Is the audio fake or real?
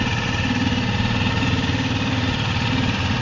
fake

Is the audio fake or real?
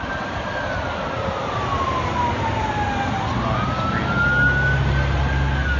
real